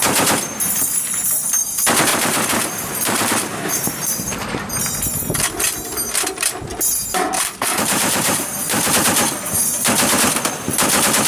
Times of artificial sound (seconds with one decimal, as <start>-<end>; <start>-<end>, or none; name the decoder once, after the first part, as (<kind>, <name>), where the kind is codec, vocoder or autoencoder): 2.1-4.7 (vocoder, BigVGAN v2); 6.7-8.9

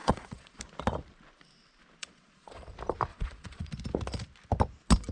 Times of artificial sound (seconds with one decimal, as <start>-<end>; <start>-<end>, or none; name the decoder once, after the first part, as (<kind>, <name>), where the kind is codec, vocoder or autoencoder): 0.0-0.6 (vocoder, Vocos); 2.0-2.7; 3.1-3.7